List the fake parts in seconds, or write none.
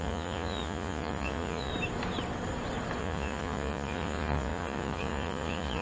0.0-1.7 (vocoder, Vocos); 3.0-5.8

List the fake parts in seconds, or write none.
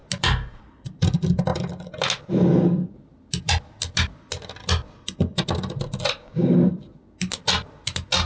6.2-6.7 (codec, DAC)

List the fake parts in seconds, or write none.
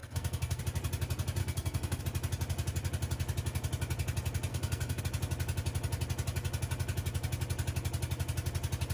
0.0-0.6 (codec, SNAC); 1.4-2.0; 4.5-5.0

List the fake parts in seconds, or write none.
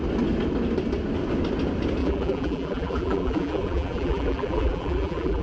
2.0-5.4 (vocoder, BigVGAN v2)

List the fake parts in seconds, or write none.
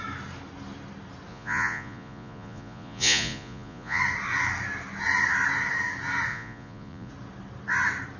1.3-4.0 (vocoder, Vocos); 6.3-7.1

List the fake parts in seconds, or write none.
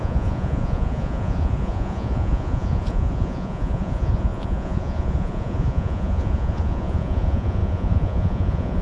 0.0-8.8 (vocoder, Vocos)